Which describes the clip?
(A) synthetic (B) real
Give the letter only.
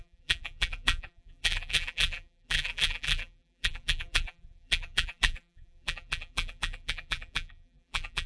A